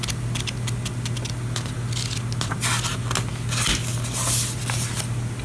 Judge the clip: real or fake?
real